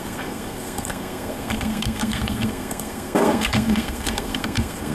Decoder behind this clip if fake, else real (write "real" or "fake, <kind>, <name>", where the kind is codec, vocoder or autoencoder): fake, codec, SNAC